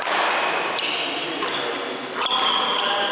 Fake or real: real